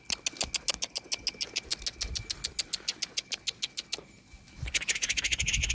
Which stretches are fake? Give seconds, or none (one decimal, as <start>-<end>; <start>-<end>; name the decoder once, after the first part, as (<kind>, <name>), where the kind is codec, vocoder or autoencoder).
none